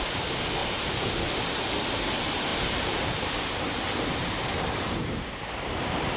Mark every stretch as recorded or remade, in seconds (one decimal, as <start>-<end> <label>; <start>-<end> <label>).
0.0-0.6 recorded; 0.6-1.2 remade; 1.2-2.5 recorded; 2.5-6.2 remade